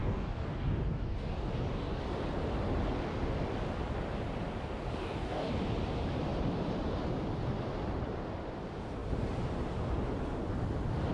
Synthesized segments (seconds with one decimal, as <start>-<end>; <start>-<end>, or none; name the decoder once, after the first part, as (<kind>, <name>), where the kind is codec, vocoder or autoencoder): 0.0-2.0 (codec, DAC); 5.0-5.5